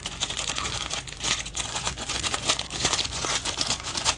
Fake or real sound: fake